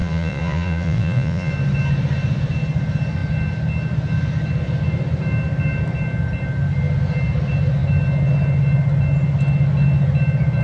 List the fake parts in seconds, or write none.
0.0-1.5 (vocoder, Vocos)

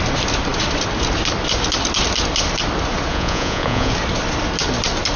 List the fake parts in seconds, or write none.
3.1-3.9 (vocoder, Vocos)

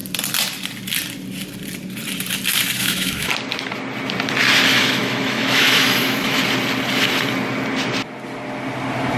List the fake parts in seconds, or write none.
2.8-3.3 (autoencoder, DAC-VAE); 4.7-6.4

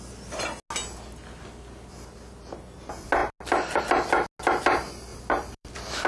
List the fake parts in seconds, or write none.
5.1-6.1 (vocoder, BigVGAN v2)